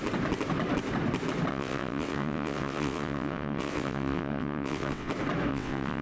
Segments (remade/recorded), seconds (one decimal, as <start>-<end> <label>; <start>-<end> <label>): 0.0-1.5 recorded; 1.5-5.1 remade; 5.1-5.5 recorded; 5.5-6.0 remade